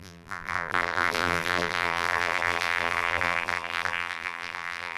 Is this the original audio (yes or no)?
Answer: no